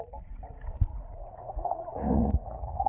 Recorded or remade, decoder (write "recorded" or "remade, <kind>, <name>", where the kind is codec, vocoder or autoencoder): remade, vocoder, Vocos